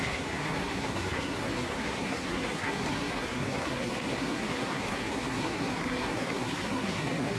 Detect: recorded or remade remade